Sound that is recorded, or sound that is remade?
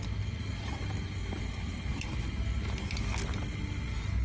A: recorded